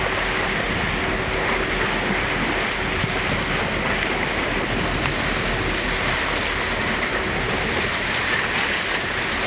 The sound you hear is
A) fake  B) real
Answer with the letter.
B